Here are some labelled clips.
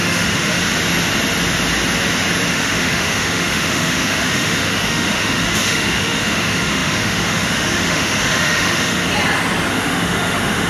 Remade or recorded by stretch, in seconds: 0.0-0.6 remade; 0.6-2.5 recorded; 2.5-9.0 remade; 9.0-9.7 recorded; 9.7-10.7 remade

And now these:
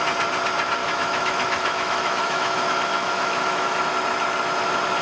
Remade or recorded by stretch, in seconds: 0.0-0.8 recorded; 0.8-3.8 remade; 3.8-5.0 recorded

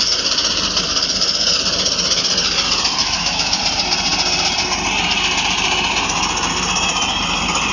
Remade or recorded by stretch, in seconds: 0.0-3.0 recorded; 3.0-3.6 remade; 3.6-7.7 recorded

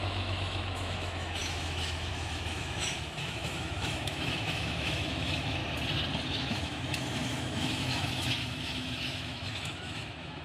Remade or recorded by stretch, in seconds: 0.0-5.6 remade; 5.6-6.3 recorded; 6.3-10.4 remade